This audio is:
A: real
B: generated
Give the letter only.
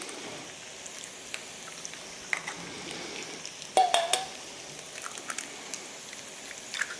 A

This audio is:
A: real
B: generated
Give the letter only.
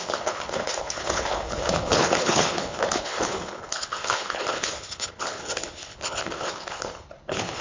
B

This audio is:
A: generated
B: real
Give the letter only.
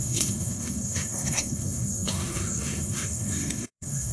A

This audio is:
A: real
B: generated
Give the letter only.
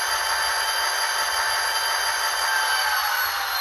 A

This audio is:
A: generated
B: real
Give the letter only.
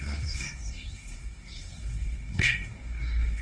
A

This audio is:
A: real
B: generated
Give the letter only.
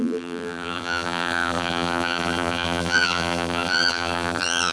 B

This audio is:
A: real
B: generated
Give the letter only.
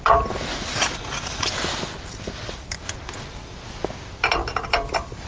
A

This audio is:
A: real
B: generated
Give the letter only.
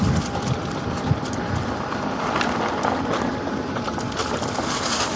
A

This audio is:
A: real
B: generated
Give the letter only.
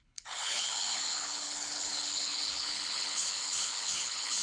B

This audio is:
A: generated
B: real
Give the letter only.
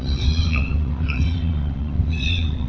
A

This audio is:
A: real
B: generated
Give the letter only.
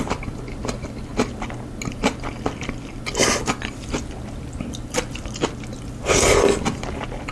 A